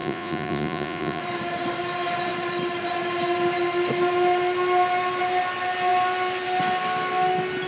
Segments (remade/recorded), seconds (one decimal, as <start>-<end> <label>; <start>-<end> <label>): 0.0-1.2 remade; 1.2-7.7 recorded